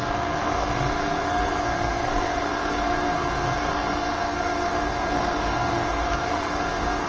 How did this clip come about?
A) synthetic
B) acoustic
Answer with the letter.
A